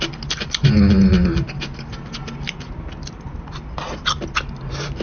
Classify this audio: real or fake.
real